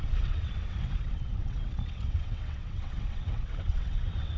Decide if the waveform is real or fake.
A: fake